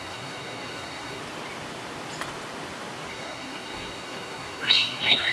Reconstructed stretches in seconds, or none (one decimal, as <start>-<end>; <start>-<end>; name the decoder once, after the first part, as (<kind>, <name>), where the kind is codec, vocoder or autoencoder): 0.0-1.2 (codec, SNAC); 3.1-5.3